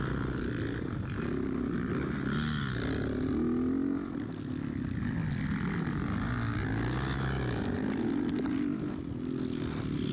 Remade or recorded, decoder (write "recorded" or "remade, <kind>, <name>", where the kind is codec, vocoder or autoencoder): recorded